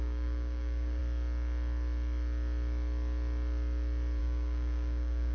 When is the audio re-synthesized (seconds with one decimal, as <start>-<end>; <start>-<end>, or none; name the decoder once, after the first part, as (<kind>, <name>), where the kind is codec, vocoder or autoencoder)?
0.0-1.0 (codec, DAC); 4.2-5.3